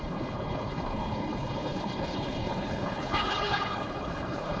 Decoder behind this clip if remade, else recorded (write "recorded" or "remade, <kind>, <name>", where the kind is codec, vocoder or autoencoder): remade, codec, HILCodec